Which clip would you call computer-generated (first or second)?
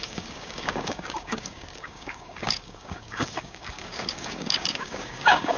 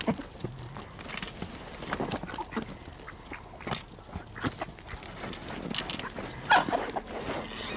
first